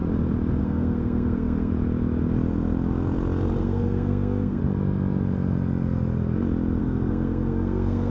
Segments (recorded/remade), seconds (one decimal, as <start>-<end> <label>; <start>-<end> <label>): 0.0-0.6 recorded; 0.6-1.7 remade; 1.7-3.6 recorded; 3.6-4.6 remade; 4.6-6.8 recorded; 6.8-8.1 remade